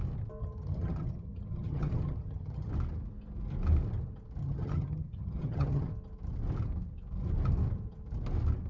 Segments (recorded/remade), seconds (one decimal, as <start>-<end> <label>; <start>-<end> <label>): 0.0-0.4 recorded; 0.4-2.7 remade; 2.7-4.4 recorded; 4.4-5.9 remade; 5.9-8.7 recorded